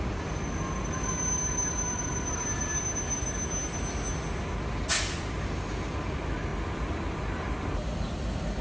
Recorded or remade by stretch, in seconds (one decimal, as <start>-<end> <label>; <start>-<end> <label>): 0.0-2.1 recorded; 2.1-2.6 remade; 2.6-8.6 recorded